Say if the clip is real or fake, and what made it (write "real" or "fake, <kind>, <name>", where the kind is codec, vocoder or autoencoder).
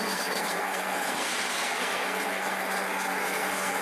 fake, codec, SNAC